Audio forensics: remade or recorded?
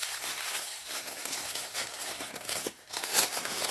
remade